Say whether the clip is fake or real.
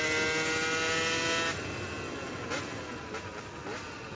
real